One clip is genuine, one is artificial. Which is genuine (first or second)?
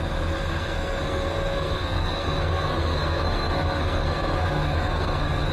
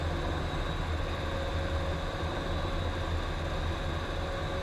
second